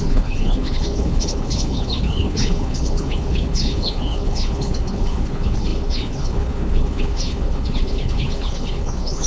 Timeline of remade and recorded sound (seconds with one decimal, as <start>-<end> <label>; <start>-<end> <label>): 0.0-9.3 remade